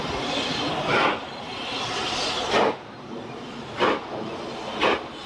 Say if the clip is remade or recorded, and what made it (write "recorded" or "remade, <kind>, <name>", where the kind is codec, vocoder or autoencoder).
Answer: recorded